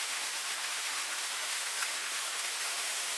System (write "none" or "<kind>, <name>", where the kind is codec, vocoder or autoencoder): autoencoder, DAC-VAE